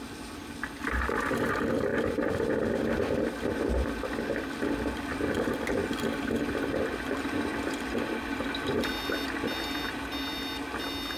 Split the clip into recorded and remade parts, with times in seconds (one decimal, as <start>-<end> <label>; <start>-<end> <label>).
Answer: 0.0-11.2 recorded